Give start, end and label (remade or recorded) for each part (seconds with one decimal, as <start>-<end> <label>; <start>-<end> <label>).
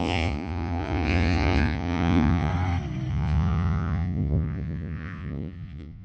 0.0-2.5 remade; 2.5-3.1 recorded; 3.1-6.0 remade